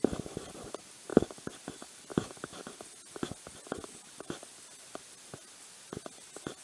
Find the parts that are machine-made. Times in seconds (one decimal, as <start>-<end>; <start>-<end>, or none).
none